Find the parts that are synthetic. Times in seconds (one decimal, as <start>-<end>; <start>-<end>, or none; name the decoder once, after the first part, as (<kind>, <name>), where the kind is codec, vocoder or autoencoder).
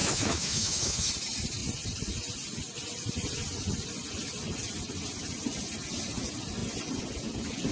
0.0-1.1 (autoencoder, DAC-VAE)